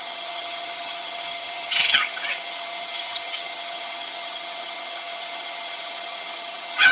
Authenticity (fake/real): fake